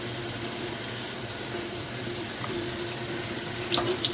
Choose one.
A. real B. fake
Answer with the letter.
B